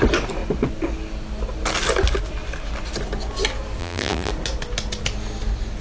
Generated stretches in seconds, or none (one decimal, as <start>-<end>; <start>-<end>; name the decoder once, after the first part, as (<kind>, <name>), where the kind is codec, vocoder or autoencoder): 3.8-4.3 (vocoder, BigVGAN v2)